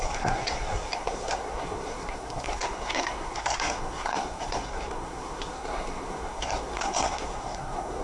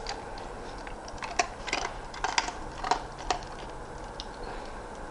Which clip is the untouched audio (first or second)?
second